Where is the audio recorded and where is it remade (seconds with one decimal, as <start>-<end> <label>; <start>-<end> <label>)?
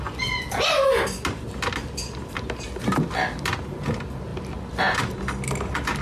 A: 0.0-6.0 recorded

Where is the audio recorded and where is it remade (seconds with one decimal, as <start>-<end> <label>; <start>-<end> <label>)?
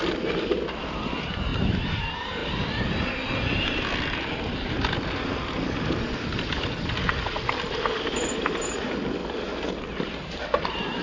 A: 0.0-6.9 remade; 6.9-7.7 recorded; 7.7-11.0 remade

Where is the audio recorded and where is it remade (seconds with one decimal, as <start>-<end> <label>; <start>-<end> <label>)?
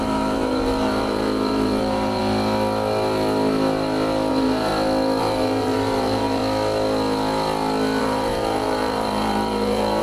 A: 0.0-2.2 remade; 2.2-4.3 recorded; 4.3-4.7 remade; 4.7-5.2 recorded; 5.2-6.4 remade; 6.4-8.0 recorded; 8.0-10.0 remade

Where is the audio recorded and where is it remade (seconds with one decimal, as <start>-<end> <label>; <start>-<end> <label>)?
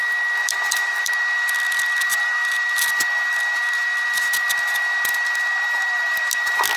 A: 0.0-0.4 recorded; 0.4-1.1 remade; 1.1-6.8 recorded